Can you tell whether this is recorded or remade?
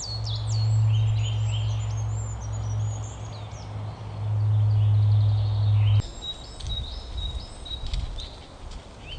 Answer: recorded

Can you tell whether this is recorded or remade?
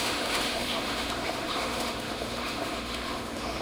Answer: remade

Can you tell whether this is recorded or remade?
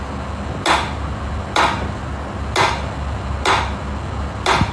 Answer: recorded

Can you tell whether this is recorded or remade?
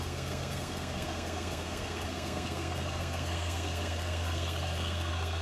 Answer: remade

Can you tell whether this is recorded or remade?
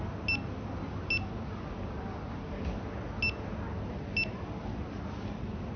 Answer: recorded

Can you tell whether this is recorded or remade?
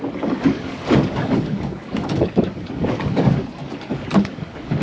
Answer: remade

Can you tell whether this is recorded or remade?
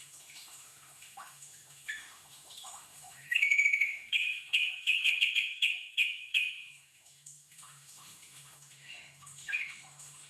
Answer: remade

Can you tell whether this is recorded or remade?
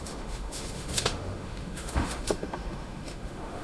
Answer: remade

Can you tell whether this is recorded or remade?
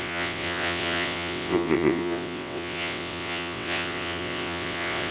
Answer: remade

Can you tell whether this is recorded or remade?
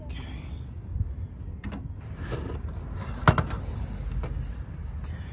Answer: recorded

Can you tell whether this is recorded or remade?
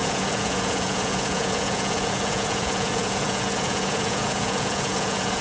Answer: remade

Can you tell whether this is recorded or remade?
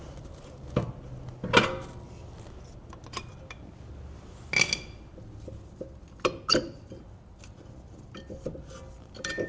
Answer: recorded